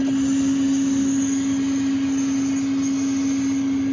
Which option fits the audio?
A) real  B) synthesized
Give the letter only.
A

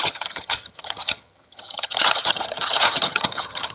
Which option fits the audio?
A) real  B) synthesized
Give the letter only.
B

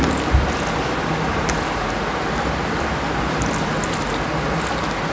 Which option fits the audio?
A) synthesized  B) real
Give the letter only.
B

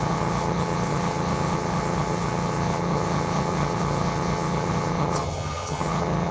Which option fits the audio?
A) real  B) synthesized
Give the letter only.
B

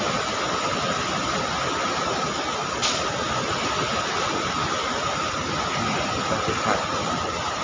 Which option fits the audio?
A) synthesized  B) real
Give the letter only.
B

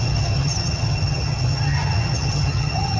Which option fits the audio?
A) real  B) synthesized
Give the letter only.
B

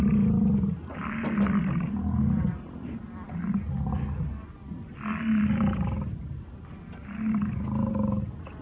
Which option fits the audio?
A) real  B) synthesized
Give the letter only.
A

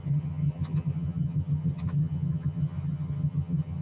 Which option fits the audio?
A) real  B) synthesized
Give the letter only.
B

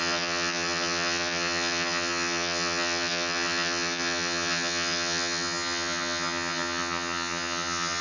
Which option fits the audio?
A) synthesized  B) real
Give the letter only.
A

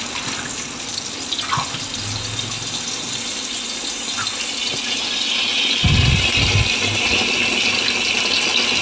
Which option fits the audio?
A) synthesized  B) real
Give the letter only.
B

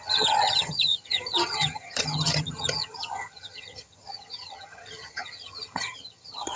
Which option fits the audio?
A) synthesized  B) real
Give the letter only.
A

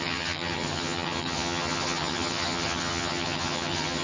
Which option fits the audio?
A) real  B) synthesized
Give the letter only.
B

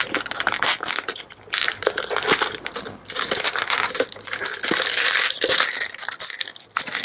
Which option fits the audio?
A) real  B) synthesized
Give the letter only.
A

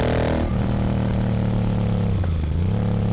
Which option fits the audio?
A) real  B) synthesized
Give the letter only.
A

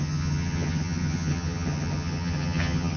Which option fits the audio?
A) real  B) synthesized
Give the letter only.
B